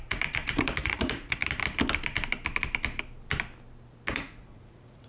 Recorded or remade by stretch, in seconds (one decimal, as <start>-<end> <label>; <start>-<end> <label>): 0.0-1.4 remade; 1.4-4.1 recorded; 4.1-5.1 remade